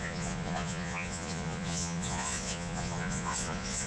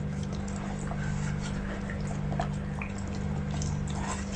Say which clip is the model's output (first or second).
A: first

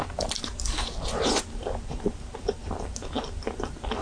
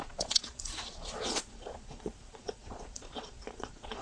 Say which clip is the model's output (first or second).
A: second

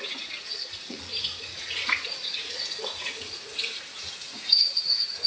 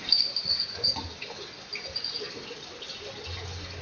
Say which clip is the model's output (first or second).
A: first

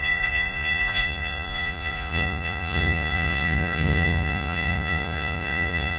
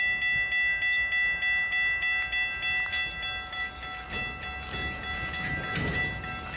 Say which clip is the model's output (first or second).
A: first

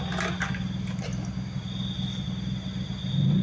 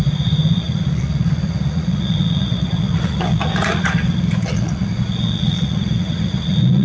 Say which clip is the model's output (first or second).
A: second